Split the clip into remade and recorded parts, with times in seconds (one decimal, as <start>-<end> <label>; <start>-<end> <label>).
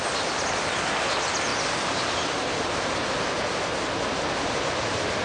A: 0.0-5.2 recorded